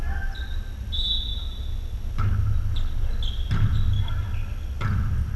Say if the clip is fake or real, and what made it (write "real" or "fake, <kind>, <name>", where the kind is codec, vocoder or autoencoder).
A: real